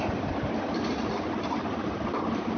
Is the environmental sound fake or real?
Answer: real